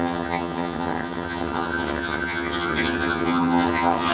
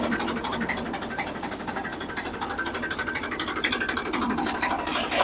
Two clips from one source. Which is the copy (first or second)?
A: first